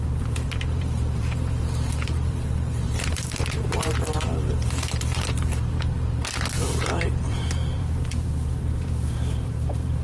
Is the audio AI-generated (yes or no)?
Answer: yes